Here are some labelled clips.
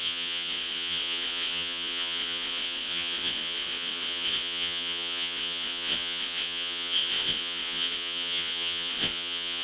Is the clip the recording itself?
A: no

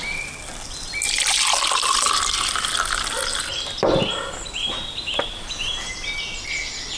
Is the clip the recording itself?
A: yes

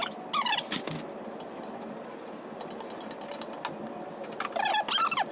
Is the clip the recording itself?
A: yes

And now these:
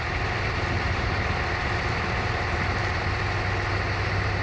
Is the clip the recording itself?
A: yes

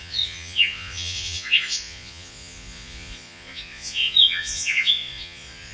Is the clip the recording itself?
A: no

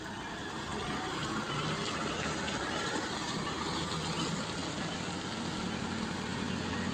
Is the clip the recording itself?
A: yes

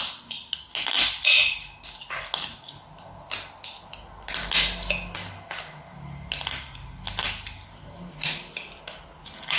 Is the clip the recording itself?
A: yes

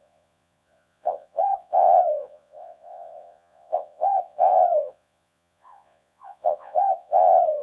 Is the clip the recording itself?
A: no